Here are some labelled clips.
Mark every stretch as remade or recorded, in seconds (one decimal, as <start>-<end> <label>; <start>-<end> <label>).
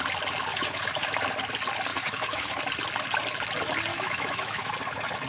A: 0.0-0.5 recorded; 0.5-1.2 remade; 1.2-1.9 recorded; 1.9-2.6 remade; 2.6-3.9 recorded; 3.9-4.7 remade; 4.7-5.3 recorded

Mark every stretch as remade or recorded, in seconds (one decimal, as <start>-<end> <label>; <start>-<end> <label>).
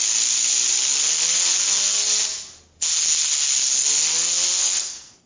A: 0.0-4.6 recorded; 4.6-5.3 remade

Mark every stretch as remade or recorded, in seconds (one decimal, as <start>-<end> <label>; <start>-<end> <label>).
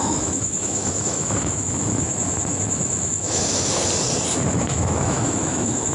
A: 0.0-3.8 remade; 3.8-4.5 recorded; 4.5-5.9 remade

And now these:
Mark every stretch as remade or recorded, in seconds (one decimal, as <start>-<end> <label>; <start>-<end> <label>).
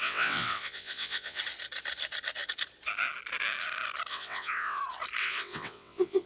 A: 0.0-1.4 remade; 1.4-4.1 recorded; 4.1-4.8 remade; 4.8-5.2 recorded; 5.2-6.3 remade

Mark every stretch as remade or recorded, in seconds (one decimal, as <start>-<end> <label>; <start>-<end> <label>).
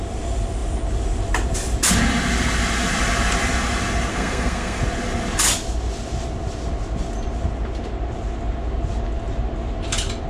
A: 0.0-4.1 recorded; 4.1-4.8 remade; 4.8-10.3 recorded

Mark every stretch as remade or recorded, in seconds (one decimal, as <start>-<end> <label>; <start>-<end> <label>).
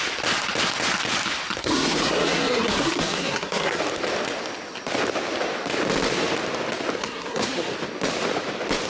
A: 0.0-1.6 recorded; 1.6-3.8 remade; 3.8-7.0 recorded; 7.0-7.7 remade; 7.7-8.9 recorded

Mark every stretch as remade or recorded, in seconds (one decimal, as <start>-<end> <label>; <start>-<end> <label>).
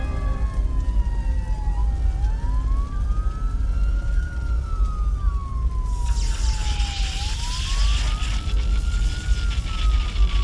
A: 0.0-10.4 recorded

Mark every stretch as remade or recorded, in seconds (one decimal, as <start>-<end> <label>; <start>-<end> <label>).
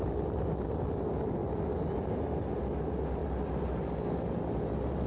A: 0.0-5.1 recorded